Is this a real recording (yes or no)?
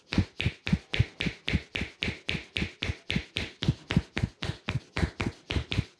yes